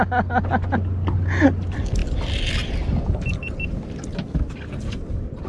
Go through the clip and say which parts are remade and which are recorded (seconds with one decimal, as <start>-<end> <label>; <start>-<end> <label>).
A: 0.0-5.5 recorded